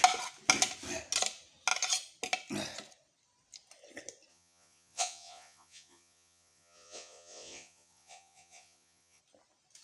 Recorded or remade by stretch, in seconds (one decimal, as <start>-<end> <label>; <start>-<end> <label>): 0.0-4.3 recorded; 4.3-9.2 remade; 9.2-9.8 recorded